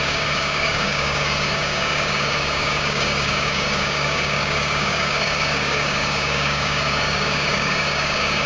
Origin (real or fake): fake